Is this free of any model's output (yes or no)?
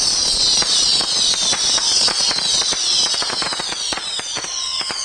no